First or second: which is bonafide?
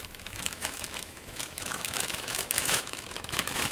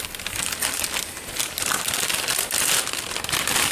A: second